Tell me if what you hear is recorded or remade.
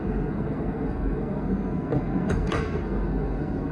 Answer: remade